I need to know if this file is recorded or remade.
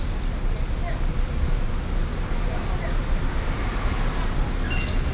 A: recorded